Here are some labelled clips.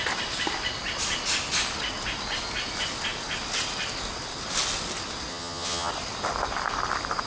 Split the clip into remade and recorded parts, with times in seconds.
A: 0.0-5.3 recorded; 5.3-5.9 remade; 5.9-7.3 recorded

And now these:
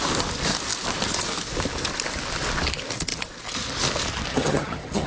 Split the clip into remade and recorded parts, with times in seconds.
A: 0.0-4.3 recorded; 4.3-5.1 remade

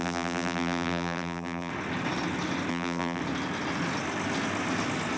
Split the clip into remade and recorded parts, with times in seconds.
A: 0.0-1.7 remade; 1.7-2.7 recorded; 2.7-3.2 remade; 3.2-5.2 recorded